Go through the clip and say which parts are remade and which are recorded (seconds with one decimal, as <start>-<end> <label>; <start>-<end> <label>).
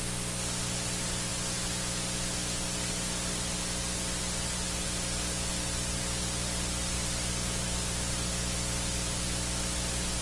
0.0-10.2 recorded